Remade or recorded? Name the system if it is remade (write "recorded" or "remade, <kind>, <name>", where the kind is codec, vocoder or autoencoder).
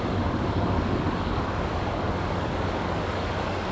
remade, codec, DAC